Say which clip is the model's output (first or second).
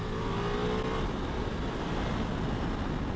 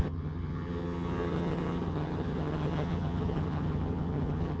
second